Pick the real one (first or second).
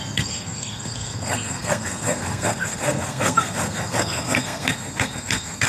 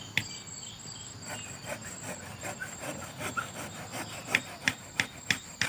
second